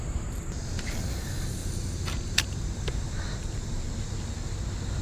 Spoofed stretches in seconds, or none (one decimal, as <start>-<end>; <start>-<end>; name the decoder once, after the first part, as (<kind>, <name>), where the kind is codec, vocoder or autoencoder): 1.6-4.6 (vocoder, BigVGAN v2)